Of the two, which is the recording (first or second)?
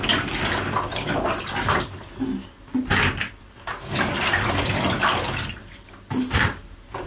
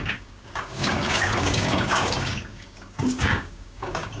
first